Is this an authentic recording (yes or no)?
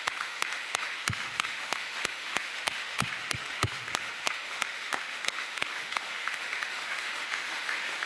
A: no